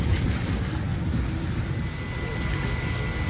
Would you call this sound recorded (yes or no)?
yes